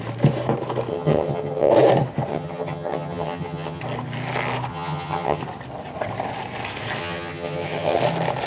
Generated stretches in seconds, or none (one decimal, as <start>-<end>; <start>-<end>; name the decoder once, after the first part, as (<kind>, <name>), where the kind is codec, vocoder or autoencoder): 0.9-1.7 (vocoder, HiFi-GAN); 2.3-3.8; 4.7-5.4; 7.0-8.0